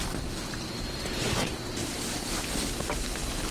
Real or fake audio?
real